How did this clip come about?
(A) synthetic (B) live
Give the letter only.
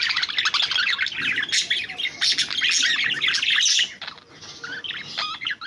B